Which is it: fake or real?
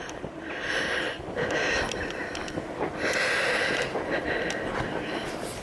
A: real